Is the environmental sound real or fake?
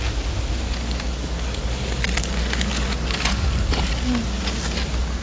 real